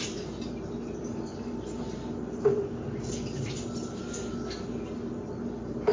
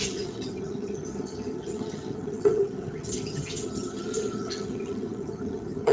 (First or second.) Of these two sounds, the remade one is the second